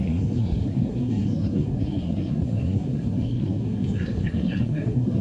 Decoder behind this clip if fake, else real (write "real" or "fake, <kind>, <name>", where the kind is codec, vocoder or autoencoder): fake, codec, SNAC